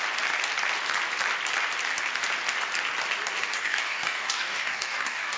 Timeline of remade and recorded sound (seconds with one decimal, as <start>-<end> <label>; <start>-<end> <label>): 0.0-3.4 recorded; 3.4-5.4 remade